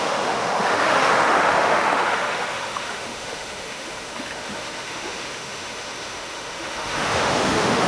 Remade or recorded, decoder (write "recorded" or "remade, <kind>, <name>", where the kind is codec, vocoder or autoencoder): remade, autoencoder, DAC-VAE